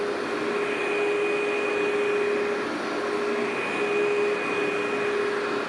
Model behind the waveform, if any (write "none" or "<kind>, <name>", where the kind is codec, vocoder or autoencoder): none